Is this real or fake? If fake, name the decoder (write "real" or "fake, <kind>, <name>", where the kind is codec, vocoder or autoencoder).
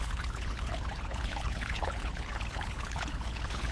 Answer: fake, codec, HILCodec